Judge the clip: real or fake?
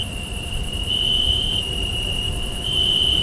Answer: fake